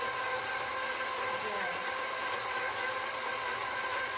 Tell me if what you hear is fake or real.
real